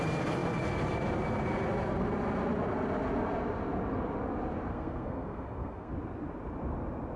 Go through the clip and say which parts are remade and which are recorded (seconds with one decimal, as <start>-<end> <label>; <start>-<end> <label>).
0.0-4.7 recorded; 4.7-5.9 remade; 5.9-7.2 recorded